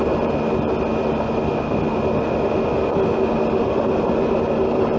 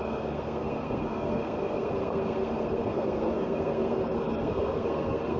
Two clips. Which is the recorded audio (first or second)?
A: first